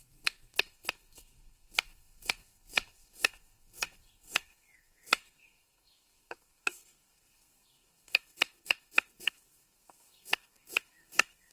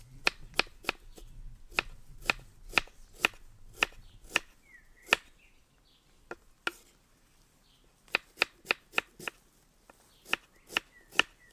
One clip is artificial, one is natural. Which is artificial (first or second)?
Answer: first